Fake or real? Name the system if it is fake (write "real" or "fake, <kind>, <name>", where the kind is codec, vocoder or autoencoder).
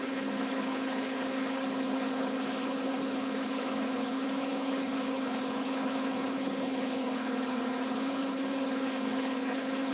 fake, codec, HILCodec